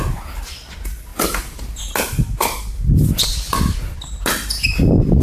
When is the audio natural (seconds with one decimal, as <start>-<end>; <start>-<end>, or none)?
0.0-5.2